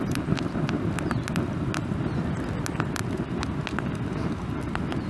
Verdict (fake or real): real